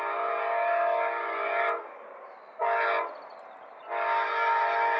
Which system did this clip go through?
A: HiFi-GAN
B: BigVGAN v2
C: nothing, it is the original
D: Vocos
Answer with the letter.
C